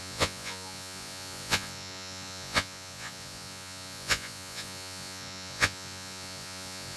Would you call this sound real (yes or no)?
no